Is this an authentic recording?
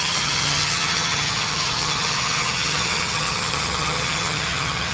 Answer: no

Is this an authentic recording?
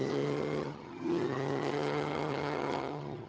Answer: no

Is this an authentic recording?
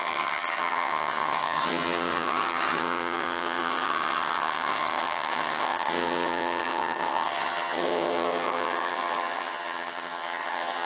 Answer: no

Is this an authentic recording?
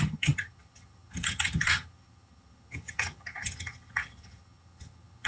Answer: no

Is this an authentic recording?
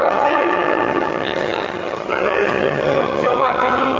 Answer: no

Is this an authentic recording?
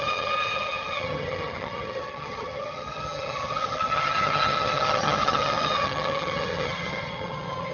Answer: no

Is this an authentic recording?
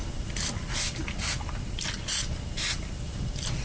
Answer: yes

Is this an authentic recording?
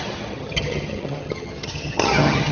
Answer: no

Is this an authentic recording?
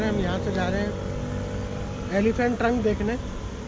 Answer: yes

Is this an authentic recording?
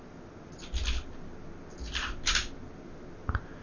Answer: yes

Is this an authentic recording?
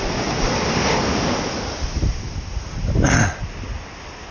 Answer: yes